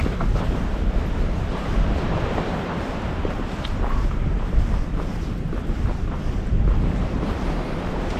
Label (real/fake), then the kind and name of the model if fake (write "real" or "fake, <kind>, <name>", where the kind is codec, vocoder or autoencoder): fake, vocoder, BigVGAN v2